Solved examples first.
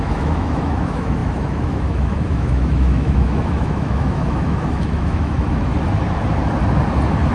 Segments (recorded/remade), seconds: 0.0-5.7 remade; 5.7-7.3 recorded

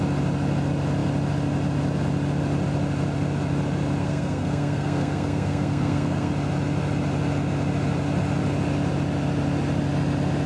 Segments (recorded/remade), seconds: 0.0-4.0 recorded; 4.0-6.3 remade; 6.3-10.5 recorded